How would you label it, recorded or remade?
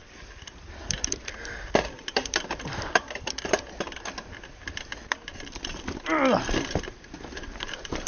remade